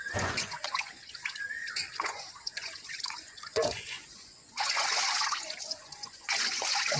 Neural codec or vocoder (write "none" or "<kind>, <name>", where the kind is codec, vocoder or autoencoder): vocoder, Vocos